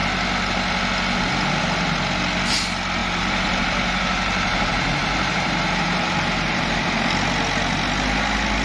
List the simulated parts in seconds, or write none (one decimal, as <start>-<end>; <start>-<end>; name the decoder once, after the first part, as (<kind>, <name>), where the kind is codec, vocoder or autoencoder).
3.0-6.8 (vocoder, BigVGAN v2)